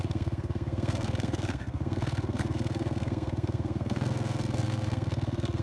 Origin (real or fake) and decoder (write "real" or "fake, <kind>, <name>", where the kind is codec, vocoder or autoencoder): fake, codec, SNAC